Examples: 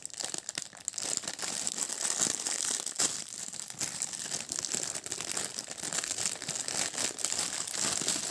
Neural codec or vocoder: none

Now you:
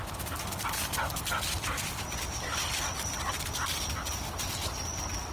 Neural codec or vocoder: none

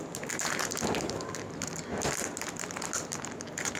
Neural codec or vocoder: none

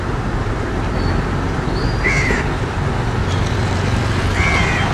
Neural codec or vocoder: none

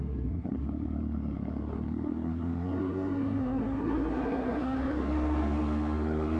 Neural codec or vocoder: codec, SNAC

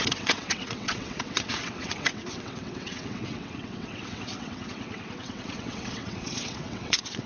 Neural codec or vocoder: vocoder, WaveNeXt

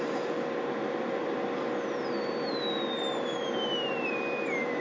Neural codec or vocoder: vocoder, BigVGAN v2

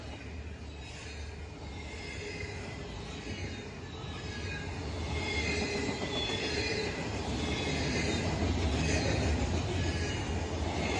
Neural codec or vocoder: none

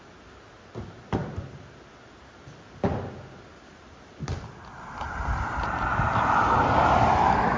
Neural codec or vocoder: none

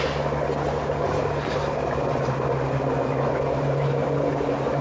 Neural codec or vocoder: none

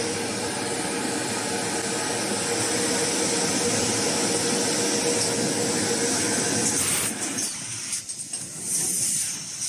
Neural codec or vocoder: none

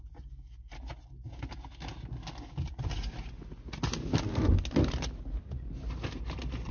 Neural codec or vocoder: none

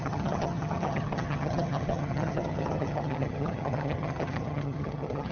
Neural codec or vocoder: vocoder, HiFi-GAN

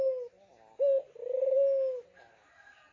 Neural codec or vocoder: none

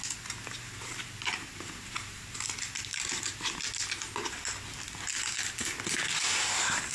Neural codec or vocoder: none